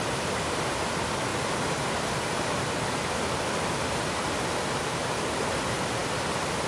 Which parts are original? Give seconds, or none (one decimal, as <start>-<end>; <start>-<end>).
0.0-6.7